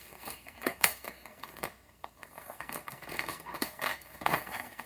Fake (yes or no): yes